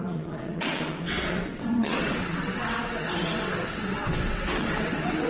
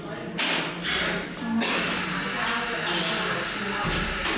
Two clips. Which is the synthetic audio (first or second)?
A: first